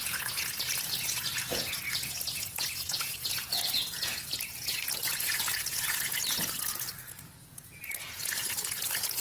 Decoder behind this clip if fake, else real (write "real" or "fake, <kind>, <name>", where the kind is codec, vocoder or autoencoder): fake, vocoder, Vocos